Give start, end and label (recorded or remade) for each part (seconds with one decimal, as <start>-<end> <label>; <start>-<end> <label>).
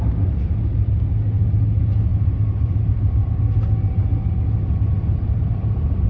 0.0-2.1 recorded; 2.1-3.4 remade; 3.4-6.1 recorded